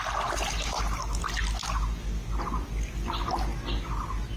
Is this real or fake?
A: real